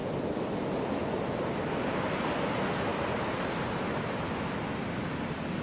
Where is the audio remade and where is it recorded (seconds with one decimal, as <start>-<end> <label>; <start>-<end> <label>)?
0.0-5.6 recorded